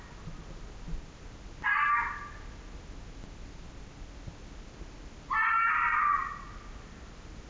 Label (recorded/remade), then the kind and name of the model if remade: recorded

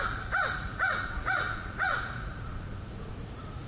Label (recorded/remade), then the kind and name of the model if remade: remade, vocoder, Vocos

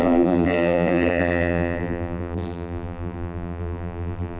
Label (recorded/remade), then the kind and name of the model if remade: remade, vocoder, BigVGAN v2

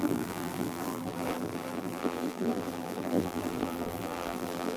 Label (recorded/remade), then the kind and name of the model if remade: remade, vocoder, BigVGAN v2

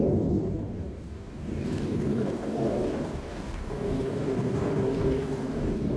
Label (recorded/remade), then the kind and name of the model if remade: remade, codec, DAC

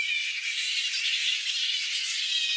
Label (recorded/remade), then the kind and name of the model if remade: recorded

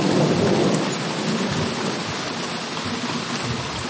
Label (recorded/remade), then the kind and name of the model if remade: recorded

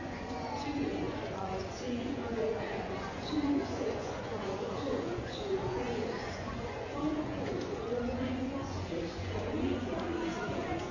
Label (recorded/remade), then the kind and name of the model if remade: remade, vocoder, Vocos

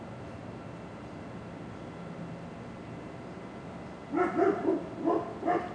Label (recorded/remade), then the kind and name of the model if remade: recorded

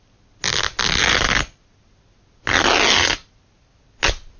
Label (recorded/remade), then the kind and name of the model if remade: recorded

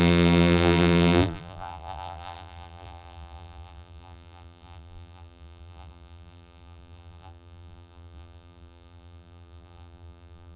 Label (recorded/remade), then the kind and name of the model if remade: remade, vocoder, BigVGAN v2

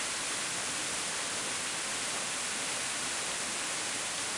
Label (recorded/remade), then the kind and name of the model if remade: recorded